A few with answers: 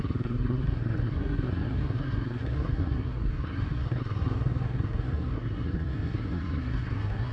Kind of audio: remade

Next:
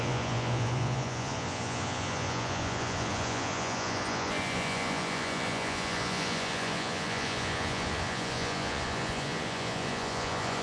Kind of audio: remade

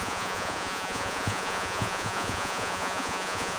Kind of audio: remade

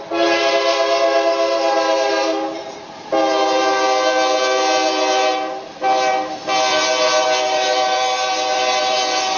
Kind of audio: remade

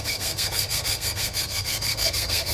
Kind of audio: remade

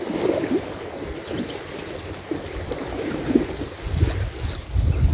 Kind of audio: recorded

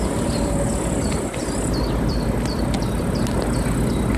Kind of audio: recorded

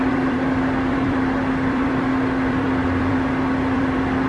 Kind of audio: remade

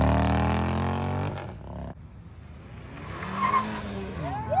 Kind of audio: recorded